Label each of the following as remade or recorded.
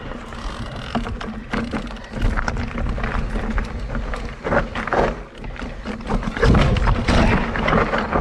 recorded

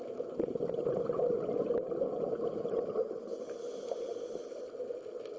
recorded